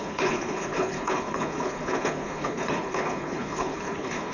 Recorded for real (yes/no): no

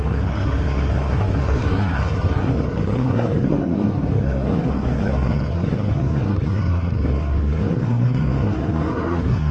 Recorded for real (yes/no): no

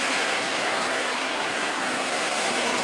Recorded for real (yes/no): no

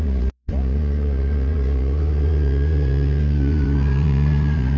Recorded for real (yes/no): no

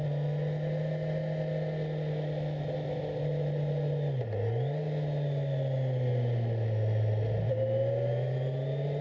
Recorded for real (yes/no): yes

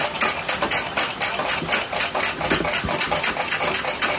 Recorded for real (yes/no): yes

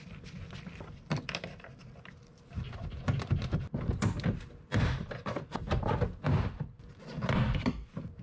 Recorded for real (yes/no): no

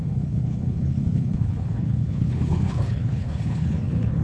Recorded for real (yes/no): no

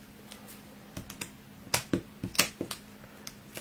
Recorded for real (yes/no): yes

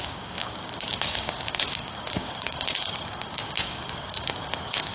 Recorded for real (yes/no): no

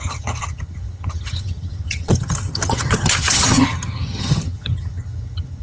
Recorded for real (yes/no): no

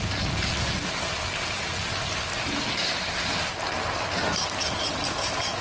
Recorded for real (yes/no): yes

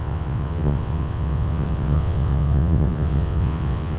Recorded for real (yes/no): no